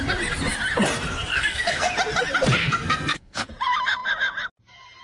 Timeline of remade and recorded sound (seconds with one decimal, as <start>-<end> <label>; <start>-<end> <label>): 0.0-1.3 recorded; 1.3-1.9 remade; 1.9-2.6 recorded; 2.6-3.5 remade; 3.5-5.0 recorded